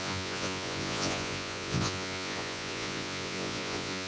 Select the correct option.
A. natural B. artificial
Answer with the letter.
B